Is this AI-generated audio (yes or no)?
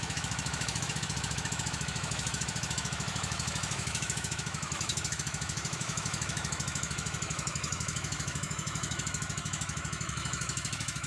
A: yes